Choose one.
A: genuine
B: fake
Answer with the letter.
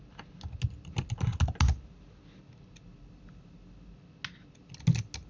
A